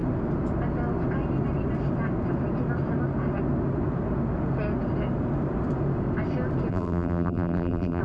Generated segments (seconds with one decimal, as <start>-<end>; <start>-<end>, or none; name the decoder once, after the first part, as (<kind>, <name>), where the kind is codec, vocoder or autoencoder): 6.7-8.0 (vocoder, BigVGAN v2)